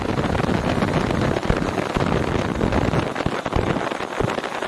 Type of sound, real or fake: real